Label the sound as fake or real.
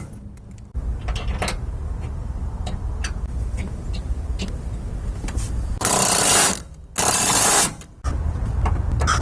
real